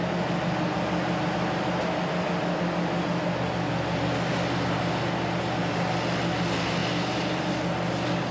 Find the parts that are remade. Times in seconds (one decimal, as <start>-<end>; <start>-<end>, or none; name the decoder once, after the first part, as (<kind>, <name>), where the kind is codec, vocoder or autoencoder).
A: none